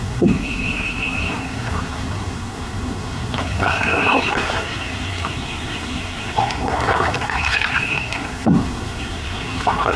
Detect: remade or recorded remade